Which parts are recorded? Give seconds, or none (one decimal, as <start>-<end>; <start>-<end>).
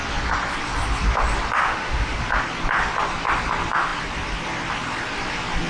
0.0-1.6; 2.2-5.7